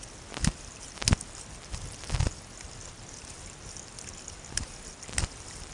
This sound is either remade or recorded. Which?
recorded